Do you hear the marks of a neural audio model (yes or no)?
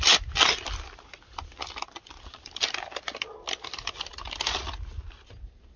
no